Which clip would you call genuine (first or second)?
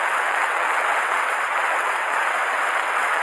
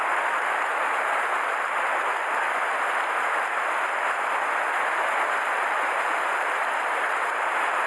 second